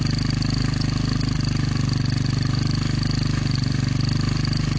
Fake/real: real